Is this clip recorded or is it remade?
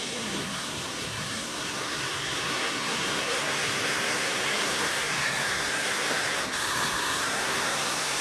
remade